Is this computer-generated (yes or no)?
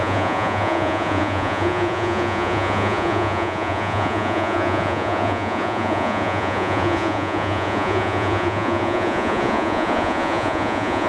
yes